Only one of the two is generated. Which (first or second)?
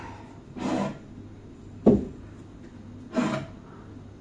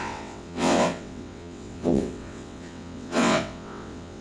second